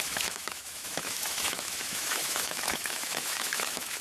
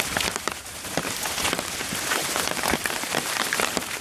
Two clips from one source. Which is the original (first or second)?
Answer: second